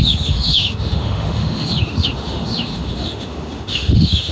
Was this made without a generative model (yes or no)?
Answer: no